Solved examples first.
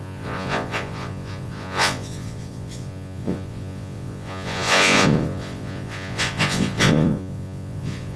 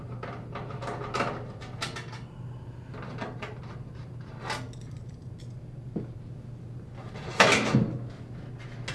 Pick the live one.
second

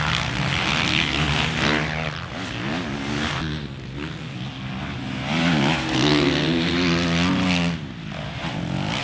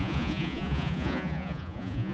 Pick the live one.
first